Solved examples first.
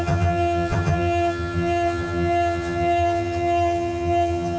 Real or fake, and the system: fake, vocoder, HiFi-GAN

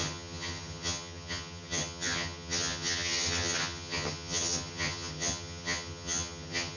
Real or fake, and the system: fake, vocoder, HiFi-GAN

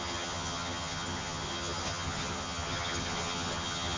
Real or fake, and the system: fake, vocoder, HiFi-GAN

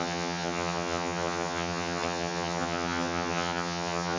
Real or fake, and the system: fake, vocoder, HiFi-GAN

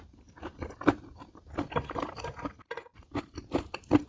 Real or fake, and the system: real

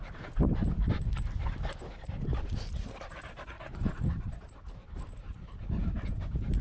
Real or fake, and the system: real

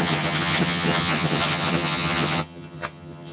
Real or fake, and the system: fake, vocoder, HiFi-GAN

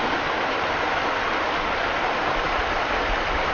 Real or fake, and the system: real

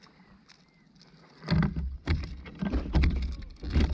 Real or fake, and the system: real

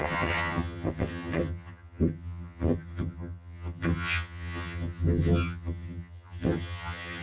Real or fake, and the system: fake, vocoder, HiFi-GAN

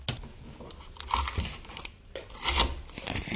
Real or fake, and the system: real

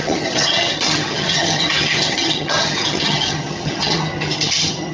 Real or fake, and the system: fake, vocoder, HiFi-GAN